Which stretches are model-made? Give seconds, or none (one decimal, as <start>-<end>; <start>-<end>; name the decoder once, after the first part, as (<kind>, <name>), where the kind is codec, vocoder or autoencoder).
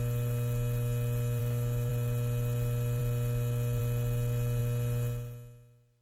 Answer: 1.4-1.9 (autoencoder, DAC-VAE)